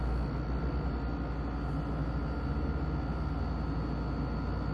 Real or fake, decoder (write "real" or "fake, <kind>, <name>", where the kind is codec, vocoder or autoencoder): real